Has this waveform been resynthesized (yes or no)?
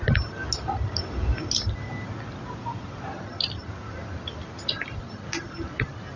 no